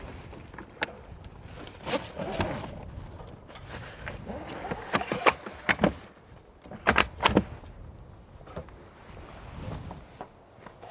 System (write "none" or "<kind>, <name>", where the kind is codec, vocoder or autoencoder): none